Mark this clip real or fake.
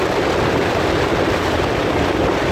fake